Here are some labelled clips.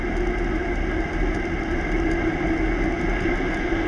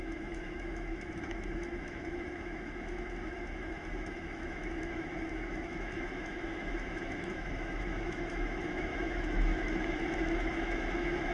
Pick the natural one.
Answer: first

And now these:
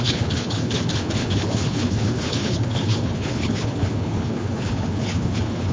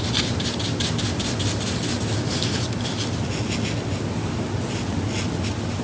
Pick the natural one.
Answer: second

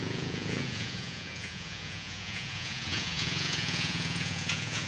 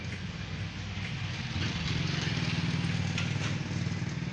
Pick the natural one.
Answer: second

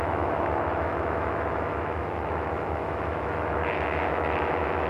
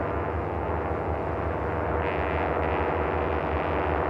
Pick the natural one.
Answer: second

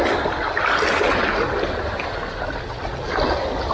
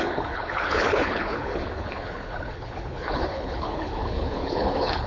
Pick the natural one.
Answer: first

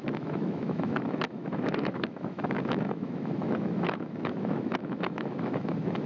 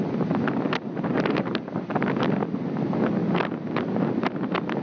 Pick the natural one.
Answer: second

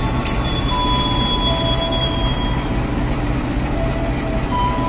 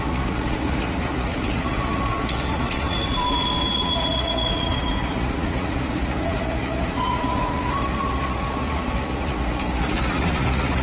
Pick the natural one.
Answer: first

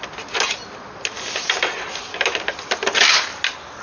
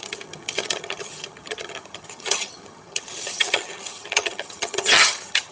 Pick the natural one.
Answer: first